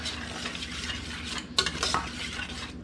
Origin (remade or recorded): recorded